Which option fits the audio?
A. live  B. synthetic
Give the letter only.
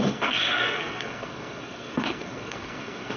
B